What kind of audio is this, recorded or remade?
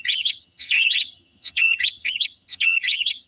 remade